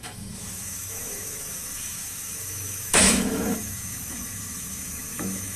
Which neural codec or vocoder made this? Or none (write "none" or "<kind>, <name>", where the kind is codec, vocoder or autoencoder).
autoencoder, DAC-VAE